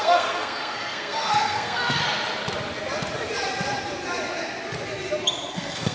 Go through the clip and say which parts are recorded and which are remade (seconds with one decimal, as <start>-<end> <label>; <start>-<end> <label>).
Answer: 0.0-2.0 remade; 2.0-5.5 recorded; 5.5-5.9 remade